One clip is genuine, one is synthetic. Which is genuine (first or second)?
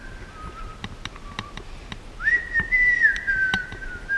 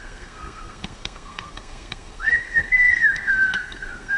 first